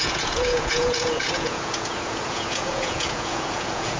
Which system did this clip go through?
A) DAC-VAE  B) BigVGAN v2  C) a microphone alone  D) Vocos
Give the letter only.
D